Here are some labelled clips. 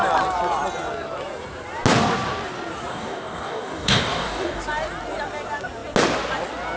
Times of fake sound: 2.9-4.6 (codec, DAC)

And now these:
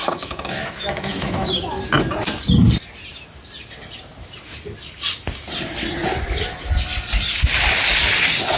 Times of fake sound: 0.0-1.5 (autoencoder, DAC-VAE)

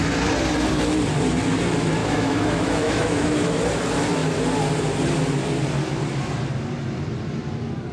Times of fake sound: 2.0-3.6 (autoencoder, DAC-VAE)

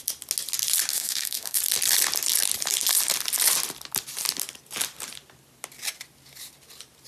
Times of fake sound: 0.9-1.6 (codec, SNAC)

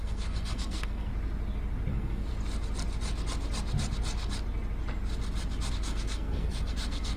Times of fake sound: 0.0-1.1 (codec, SNAC); 1.9-2.3; 5.7-7.2